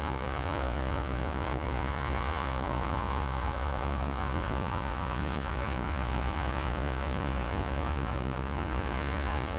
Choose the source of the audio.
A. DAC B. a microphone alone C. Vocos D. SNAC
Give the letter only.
C